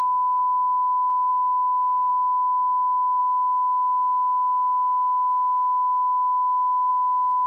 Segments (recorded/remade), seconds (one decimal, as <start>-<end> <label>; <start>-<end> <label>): 0.0-3.2 recorded; 3.2-6.9 remade; 6.9-7.5 recorded